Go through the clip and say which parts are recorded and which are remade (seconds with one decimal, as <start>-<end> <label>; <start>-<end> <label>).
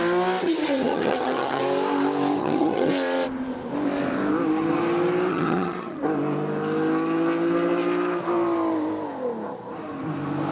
0.0-0.4 recorded; 0.4-1.6 remade; 1.6-2.4 recorded; 2.4-2.9 remade; 2.9-5.3 recorded; 5.3-6.0 remade; 6.0-10.5 recorded